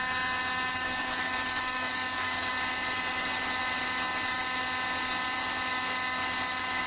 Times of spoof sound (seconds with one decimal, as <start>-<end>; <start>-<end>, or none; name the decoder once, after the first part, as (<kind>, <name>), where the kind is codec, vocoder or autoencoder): 0.7-2.5 (codec, DAC)